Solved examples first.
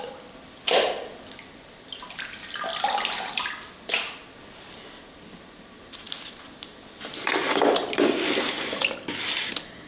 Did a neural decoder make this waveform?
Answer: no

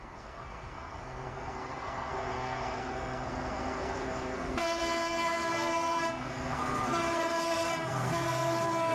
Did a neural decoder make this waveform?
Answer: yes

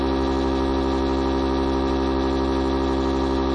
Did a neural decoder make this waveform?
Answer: no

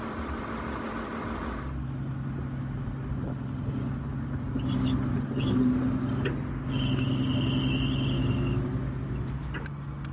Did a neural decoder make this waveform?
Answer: no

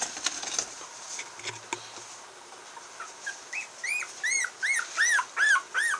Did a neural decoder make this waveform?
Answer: no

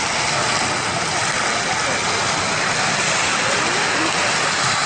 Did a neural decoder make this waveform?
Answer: no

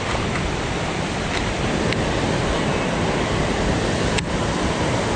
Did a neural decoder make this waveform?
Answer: no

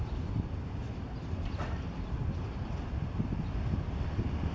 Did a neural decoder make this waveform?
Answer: no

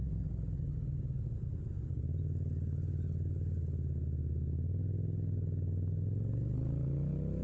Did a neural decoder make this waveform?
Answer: no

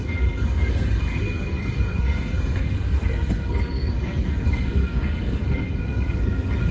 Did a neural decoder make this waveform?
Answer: yes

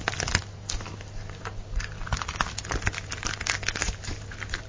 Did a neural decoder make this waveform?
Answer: no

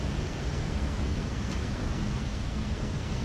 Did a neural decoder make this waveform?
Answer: yes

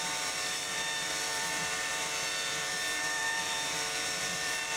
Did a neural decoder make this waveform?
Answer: yes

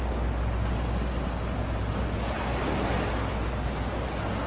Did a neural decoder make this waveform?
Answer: no